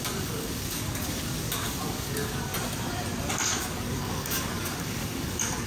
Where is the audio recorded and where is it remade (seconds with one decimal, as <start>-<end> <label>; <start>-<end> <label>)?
0.0-2.5 remade; 2.5-3.3 recorded; 3.3-5.7 remade